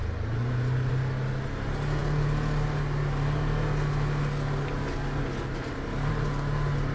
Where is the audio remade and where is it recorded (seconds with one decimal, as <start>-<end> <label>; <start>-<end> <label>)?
0.0-6.9 recorded